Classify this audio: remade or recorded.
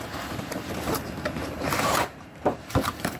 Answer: remade